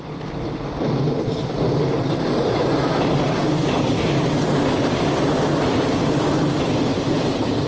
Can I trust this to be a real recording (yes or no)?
yes